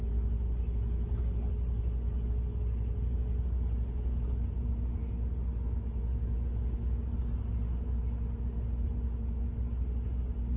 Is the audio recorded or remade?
recorded